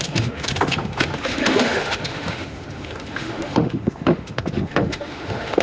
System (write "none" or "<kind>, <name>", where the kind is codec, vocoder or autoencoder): autoencoder, DAC-VAE